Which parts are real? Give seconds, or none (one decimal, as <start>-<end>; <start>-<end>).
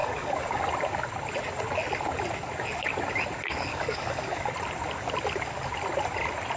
0.6-3.7; 4.5-6.6